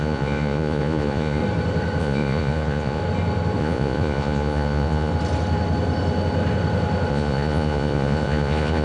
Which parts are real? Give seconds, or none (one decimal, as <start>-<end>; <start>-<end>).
1.4-2.0; 3.0-3.6; 5.1-7.1